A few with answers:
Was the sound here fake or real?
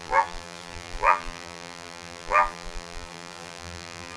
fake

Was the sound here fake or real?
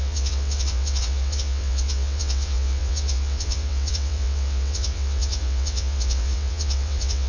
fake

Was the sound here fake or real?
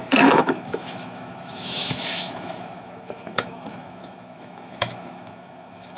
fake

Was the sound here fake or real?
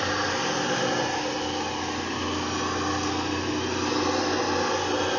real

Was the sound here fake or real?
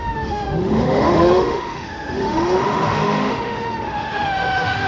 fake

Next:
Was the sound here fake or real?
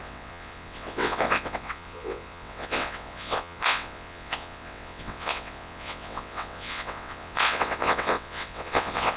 fake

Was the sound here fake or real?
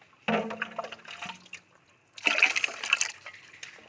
real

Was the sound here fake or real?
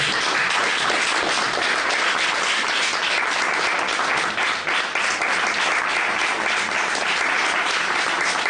real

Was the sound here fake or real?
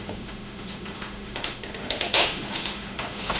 fake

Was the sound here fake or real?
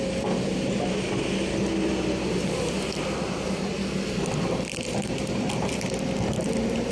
fake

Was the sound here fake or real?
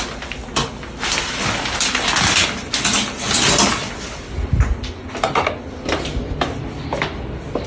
real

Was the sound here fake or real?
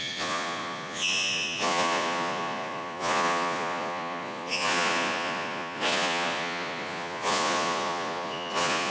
fake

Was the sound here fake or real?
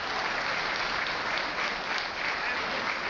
real